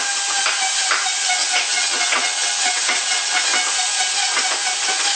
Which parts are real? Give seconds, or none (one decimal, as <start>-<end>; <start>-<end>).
0.0-1.4; 3.4-5.2